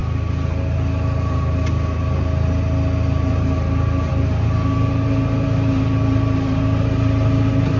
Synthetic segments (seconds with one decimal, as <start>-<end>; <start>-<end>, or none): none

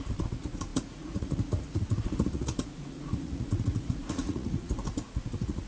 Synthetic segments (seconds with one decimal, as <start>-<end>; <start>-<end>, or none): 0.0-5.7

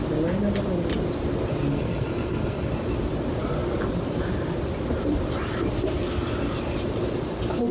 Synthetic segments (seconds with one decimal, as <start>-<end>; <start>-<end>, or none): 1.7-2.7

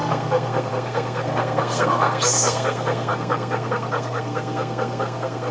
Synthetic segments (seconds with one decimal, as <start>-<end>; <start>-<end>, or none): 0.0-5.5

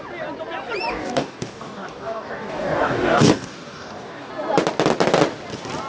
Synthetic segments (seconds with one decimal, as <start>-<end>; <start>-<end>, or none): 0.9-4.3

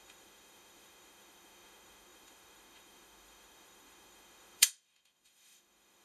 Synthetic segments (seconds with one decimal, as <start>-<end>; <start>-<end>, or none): 0.0-6.0

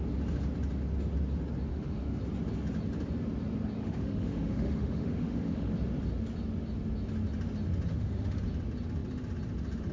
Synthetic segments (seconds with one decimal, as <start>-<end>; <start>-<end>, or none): 1.7-2.2; 3.8-5.7; 7.9-8.4